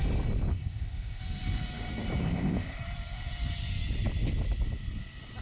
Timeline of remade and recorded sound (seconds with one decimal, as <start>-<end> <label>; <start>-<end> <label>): 0.0-0.5 recorded; 0.5-1.2 remade; 1.2-2.2 recorded; 2.2-2.8 remade; 2.8-5.4 recorded